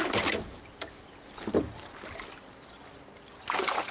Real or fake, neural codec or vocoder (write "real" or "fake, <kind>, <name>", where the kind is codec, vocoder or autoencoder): real